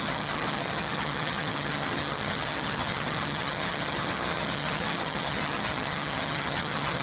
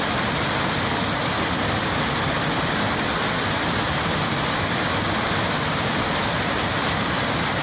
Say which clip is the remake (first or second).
first